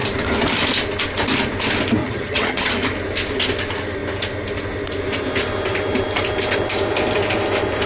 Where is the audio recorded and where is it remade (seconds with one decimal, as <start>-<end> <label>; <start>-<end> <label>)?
0.0-2.0 recorded; 2.0-2.7 remade; 2.7-7.9 recorded